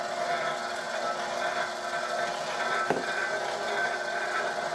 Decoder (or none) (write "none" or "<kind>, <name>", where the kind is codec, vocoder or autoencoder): none